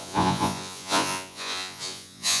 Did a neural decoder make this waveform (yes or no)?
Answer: yes